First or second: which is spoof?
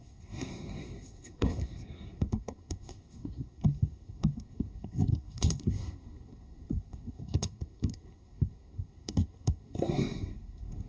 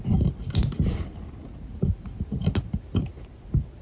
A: first